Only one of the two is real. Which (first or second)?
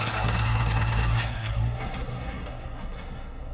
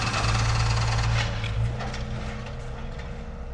second